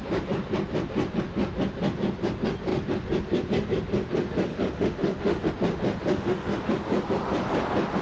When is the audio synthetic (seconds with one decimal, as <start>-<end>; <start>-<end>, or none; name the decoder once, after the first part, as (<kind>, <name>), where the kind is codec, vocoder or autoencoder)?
4.5-5.5 (autoencoder, DAC-VAE); 6.1-6.7